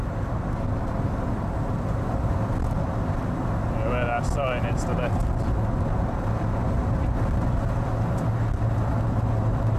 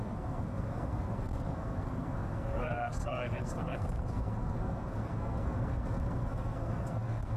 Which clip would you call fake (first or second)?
second